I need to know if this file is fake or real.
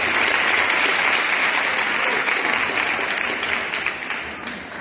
real